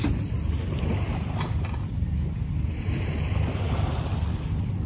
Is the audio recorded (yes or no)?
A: yes